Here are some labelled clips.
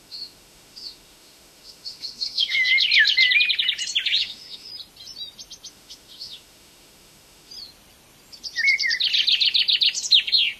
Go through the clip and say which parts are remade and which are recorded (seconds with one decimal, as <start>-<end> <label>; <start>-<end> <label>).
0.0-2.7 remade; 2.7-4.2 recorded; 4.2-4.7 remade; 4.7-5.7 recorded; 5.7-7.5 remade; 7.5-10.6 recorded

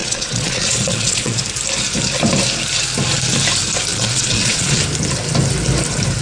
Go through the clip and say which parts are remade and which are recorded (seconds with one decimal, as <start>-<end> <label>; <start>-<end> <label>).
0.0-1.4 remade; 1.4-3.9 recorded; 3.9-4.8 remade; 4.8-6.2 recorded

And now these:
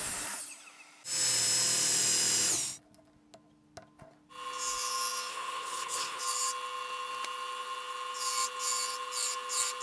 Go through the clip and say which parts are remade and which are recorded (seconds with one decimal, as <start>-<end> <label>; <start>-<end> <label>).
0.0-5.3 recorded; 5.3-6.2 remade; 6.2-9.8 recorded

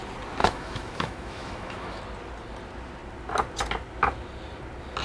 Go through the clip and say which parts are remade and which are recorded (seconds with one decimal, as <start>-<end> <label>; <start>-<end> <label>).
0.0-0.4 recorded; 0.4-2.0 remade; 2.0-5.0 recorded